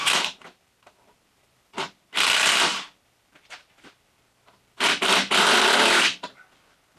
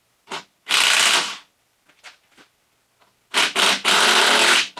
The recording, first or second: second